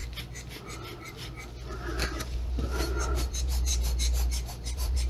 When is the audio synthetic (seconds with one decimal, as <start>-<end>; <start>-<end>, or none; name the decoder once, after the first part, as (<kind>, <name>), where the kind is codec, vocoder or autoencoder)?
2.2-3.7 (vocoder, BigVGAN v2); 4.5-5.1